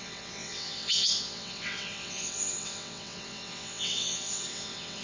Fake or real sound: fake